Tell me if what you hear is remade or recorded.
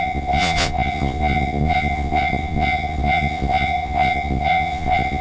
remade